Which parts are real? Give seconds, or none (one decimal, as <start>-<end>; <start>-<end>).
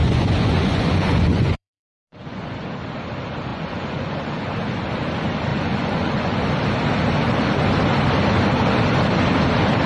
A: 2.7-3.5; 4.5-5.5; 6.4-9.9